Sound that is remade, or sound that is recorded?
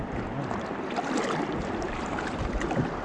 remade